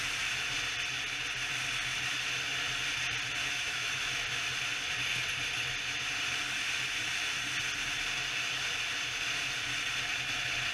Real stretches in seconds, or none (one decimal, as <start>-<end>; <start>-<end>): 0.0-3.4; 4.1-10.7

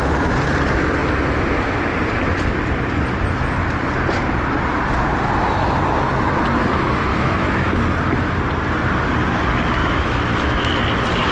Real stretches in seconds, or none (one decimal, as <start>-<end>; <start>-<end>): 0.0-7.1; 7.8-9.8; 10.7-11.3

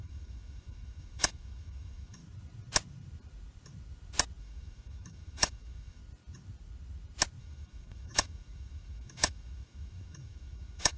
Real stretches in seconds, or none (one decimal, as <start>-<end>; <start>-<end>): 2.2-4.4; 6.0-7.4

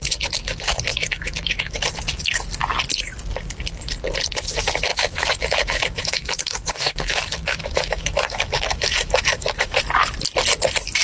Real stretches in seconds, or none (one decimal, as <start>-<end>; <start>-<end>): 0.0-0.9; 1.8-4.9; 9.8-11.0

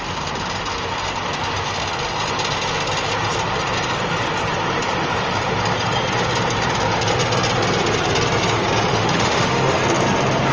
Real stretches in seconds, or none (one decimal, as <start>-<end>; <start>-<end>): 0.0-8.9; 9.8-10.5

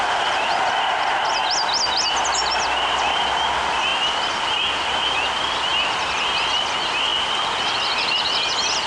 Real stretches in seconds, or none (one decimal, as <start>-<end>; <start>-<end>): 0.0-8.9

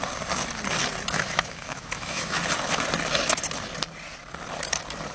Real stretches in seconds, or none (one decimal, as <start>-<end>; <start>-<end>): 0.0-1.1; 2.4-5.1

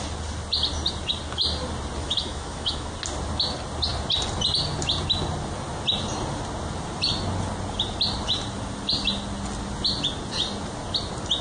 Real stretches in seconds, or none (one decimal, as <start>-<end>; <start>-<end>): 0.0-2.0; 2.9-11.4